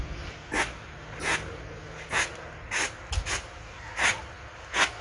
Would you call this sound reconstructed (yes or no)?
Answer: no